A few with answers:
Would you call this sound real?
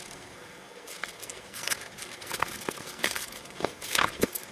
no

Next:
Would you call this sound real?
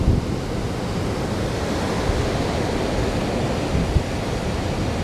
yes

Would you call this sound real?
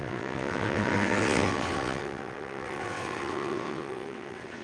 no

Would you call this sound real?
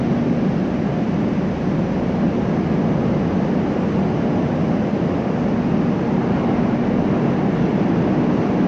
yes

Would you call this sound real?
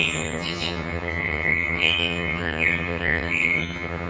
no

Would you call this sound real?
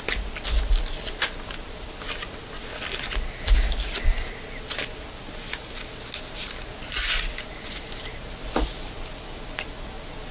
yes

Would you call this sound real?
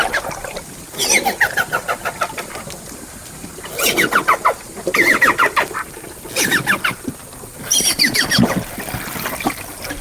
yes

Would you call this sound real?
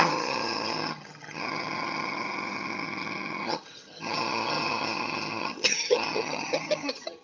no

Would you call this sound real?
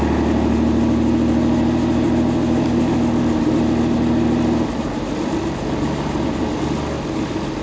yes